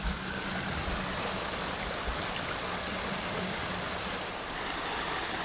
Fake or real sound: real